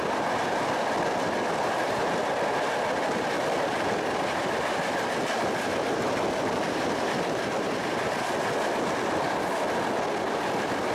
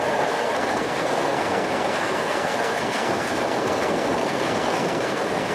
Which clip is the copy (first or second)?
second